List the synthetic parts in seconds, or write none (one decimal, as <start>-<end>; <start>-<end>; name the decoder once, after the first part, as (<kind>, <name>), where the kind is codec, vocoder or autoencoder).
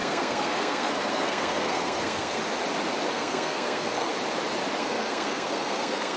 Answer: 0.0-2.4 (codec, SNAC); 3.1-4.1; 4.8-6.2